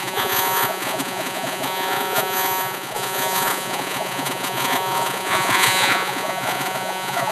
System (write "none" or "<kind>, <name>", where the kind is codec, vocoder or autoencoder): vocoder, Vocos